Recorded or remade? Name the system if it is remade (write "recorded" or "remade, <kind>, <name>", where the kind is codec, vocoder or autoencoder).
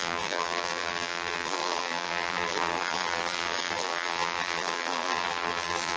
remade, vocoder, BigVGAN v2